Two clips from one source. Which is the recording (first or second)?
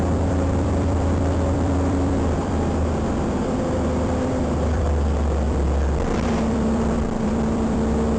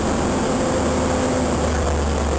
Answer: second